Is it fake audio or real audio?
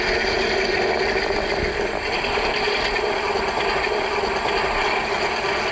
real